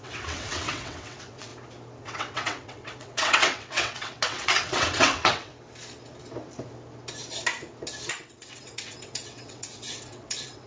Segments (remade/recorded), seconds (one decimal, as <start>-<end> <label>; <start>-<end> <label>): 0.0-1.5 remade; 1.5-2.0 recorded; 2.0-5.5 remade; 5.5-8.1 recorded; 8.1-10.7 remade